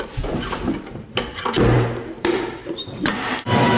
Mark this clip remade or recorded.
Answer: remade